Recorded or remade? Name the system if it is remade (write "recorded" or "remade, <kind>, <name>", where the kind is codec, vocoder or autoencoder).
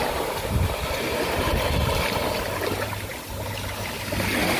remade, vocoder, BigVGAN v2